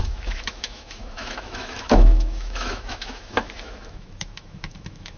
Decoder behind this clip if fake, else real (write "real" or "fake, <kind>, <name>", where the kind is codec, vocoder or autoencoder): fake, autoencoder, DAC-VAE